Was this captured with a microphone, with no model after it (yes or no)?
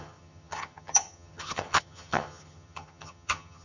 no